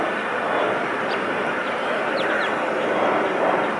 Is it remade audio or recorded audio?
recorded